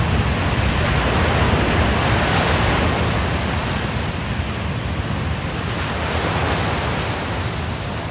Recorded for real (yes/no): yes